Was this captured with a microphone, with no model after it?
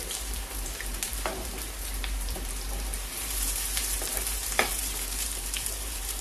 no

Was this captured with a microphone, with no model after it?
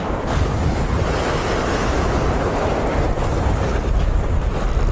yes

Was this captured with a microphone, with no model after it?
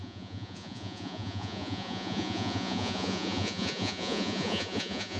no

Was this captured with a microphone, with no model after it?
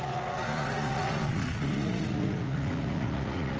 no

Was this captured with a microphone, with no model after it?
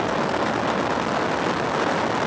yes